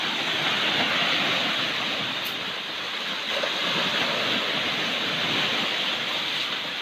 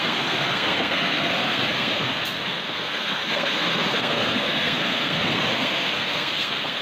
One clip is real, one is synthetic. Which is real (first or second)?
first